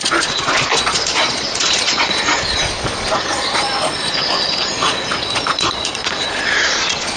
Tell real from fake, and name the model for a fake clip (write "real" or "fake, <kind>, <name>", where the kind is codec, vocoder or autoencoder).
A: fake, vocoder, Vocos